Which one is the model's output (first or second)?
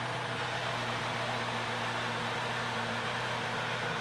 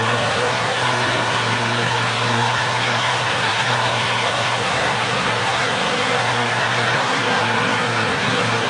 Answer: second